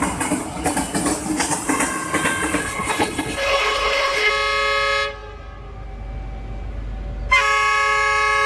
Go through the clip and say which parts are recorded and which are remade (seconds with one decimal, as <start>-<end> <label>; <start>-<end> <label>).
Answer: 0.0-2.6 recorded; 2.6-4.3 remade; 4.3-8.5 recorded